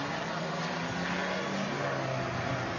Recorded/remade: recorded